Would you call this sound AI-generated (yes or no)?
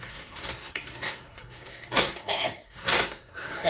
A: yes